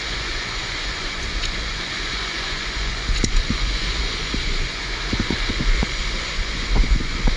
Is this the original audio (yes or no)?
no